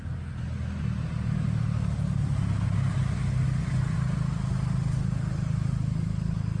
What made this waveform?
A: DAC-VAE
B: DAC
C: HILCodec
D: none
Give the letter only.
D